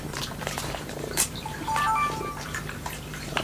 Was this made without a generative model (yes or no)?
no